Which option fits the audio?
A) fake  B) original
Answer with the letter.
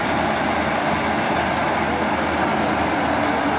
B